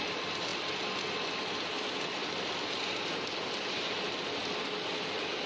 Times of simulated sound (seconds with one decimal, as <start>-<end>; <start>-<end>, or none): none